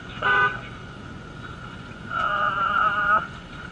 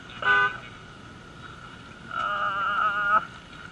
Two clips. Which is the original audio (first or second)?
second